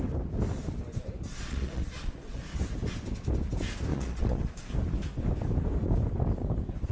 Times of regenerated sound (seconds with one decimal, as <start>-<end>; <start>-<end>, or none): 1.3-2.4; 3.9-4.7